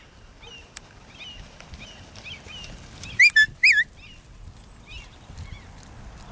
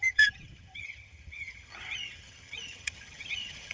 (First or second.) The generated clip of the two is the second